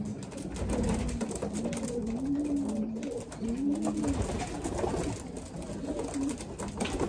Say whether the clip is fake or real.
real